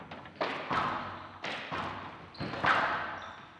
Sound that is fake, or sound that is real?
real